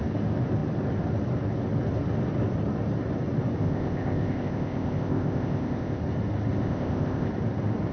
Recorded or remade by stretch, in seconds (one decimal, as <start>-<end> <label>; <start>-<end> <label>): 0.0-3.6 recorded; 3.6-6.0 remade; 6.0-6.6 recorded; 6.6-7.3 remade; 7.3-7.9 recorded

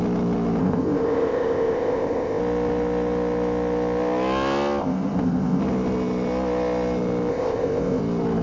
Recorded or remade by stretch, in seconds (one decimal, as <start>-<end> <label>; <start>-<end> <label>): 0.0-0.6 recorded; 0.6-2.4 remade; 2.4-4.8 recorded; 4.8-5.6 remade; 5.6-7.3 recorded; 7.3-8.0 remade; 8.0-8.4 recorded